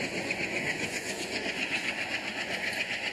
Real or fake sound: fake